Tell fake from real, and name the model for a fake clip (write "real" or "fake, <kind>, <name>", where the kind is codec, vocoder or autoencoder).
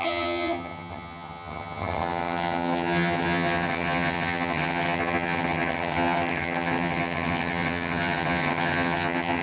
fake, vocoder, HiFi-GAN